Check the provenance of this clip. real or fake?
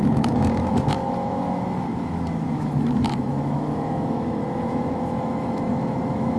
fake